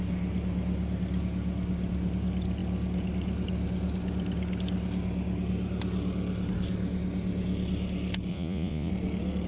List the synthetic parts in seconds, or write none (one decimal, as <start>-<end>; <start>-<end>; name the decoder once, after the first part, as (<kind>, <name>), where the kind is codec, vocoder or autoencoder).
8.3-8.9 (vocoder, Vocos)